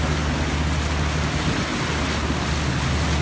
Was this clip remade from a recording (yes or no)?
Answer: no